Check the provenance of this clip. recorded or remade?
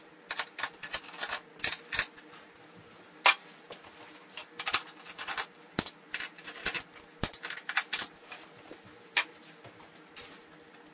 recorded